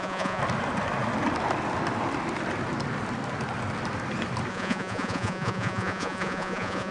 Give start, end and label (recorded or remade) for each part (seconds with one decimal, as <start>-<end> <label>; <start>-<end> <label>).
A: 0.0-0.4 remade; 0.4-4.5 recorded; 4.5-6.9 remade